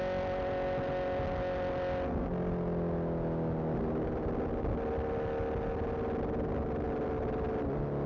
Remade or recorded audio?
recorded